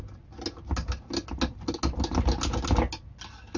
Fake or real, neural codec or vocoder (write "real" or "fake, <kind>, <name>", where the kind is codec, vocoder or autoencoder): real